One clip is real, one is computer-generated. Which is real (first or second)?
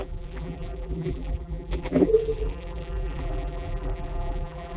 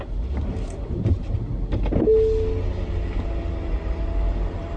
second